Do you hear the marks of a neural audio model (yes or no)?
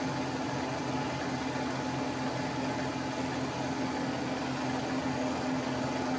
no